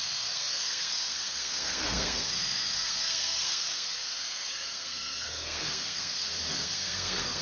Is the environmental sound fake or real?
fake